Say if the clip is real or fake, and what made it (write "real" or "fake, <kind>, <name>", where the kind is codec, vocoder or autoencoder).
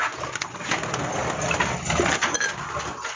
real